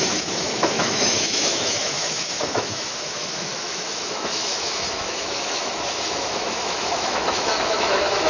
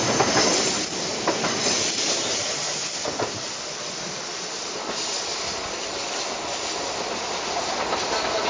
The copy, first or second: first